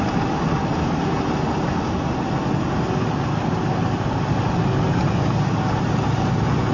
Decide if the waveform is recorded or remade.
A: recorded